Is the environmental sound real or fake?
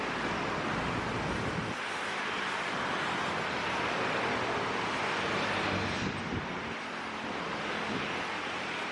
real